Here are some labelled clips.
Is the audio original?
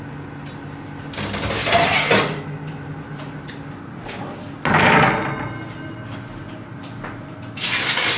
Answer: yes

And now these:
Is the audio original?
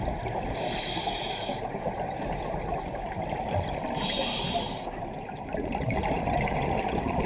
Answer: yes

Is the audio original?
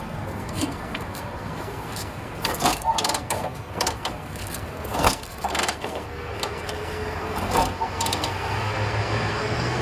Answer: no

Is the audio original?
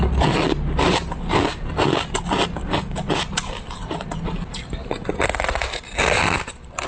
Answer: yes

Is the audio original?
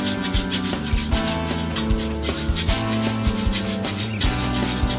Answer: yes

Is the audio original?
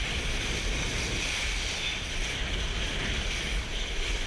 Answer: yes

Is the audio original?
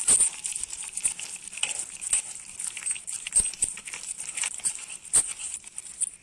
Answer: yes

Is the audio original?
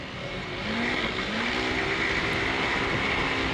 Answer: yes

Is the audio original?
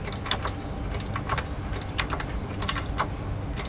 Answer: yes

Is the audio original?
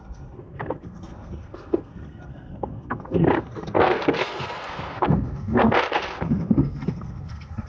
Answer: no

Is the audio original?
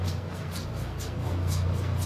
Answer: no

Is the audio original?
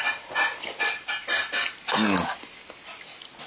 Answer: yes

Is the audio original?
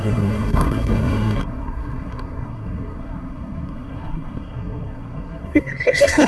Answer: no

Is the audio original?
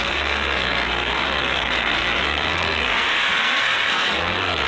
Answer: no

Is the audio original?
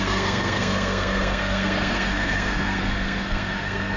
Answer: no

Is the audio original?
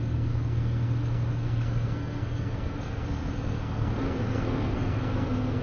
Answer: no